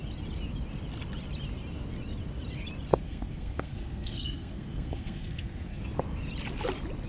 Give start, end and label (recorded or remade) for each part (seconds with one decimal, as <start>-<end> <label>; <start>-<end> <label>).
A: 0.0-2.9 recorded; 2.9-5.8 remade; 5.8-7.1 recorded